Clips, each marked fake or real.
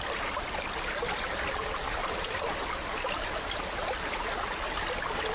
real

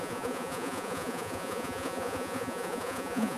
fake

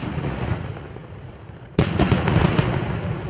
fake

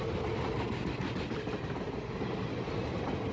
real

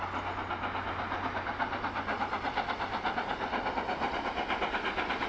real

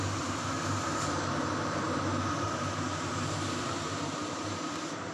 fake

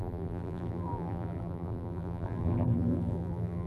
fake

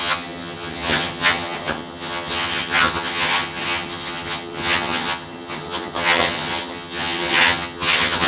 fake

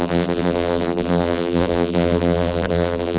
fake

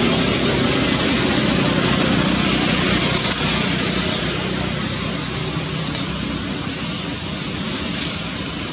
real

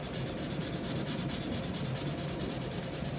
fake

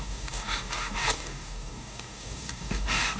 fake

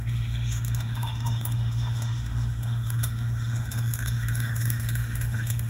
fake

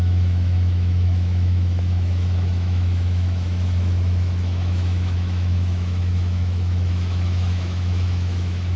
fake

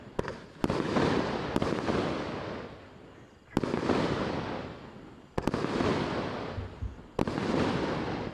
real